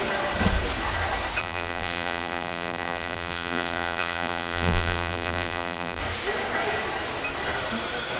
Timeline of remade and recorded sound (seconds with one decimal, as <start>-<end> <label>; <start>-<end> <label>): 0.0-1.4 recorded; 1.4-6.0 remade; 6.0-8.2 recorded